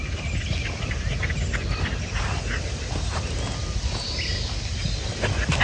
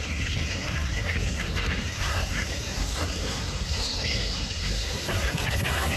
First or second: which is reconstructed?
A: second